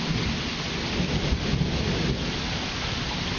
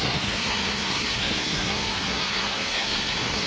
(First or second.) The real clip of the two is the first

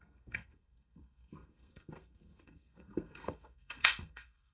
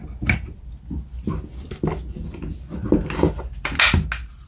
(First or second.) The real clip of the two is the second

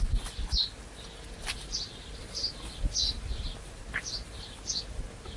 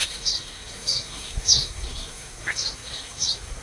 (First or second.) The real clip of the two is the first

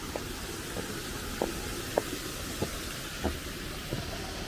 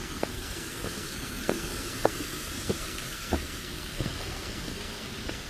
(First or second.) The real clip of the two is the first